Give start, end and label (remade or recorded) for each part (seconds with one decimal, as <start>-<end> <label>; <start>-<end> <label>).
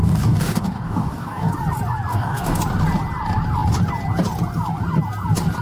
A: 0.0-1.5 remade; 1.5-2.1 recorded; 2.1-2.6 remade; 2.6-5.6 recorded